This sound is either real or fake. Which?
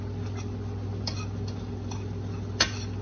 real